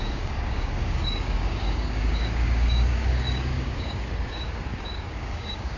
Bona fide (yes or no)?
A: no